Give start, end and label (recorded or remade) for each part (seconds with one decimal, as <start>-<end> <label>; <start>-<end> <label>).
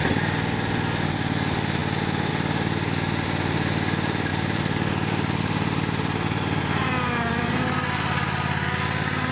0.0-4.3 recorded; 4.3-6.6 remade; 6.6-9.3 recorded